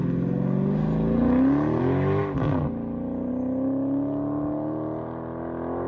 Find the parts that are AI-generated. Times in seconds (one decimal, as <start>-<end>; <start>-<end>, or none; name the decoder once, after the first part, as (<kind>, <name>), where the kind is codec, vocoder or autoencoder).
none